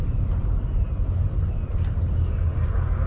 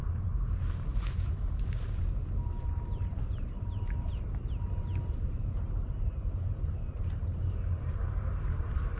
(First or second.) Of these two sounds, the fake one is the second